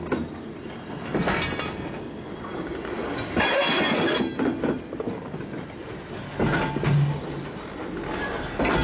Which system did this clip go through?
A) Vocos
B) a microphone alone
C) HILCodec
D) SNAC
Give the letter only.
B